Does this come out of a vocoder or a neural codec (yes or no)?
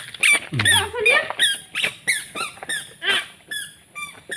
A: no